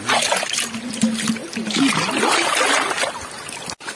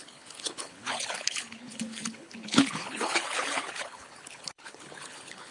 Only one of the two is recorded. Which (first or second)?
first